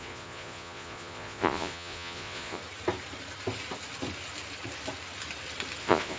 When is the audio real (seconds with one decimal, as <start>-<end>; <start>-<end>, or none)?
2.6-5.8